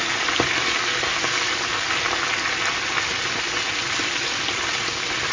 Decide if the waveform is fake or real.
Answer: real